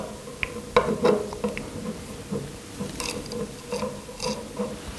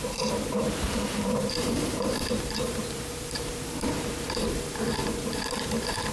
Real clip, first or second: first